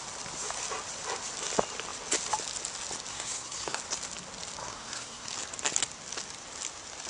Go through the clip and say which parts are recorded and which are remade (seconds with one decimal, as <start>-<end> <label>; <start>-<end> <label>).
0.0-3.1 recorded; 3.1-3.8 remade; 3.8-4.6 recorded; 4.6-5.3 remade; 5.3-7.1 recorded